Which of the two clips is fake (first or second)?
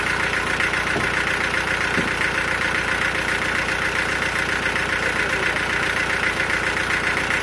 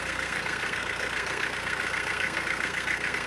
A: second